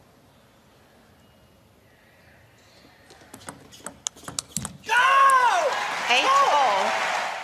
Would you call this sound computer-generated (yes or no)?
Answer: no